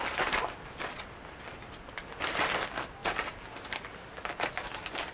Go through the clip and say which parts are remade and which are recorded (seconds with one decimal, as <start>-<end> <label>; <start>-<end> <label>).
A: 0.0-5.1 recorded